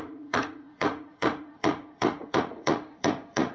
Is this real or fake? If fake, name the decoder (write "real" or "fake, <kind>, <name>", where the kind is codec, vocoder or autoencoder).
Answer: fake, vocoder, Vocos